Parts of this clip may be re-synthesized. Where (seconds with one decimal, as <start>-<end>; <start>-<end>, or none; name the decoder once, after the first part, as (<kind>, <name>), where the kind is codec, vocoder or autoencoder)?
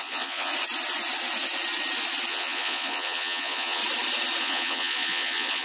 0.0-0.5 (vocoder, Vocos); 2.3-3.8; 4.4-5.6